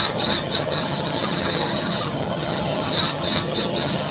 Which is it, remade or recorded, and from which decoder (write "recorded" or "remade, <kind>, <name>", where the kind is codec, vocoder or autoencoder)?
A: remade, vocoder, HiFi-GAN